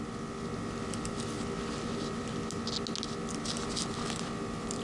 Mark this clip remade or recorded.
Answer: recorded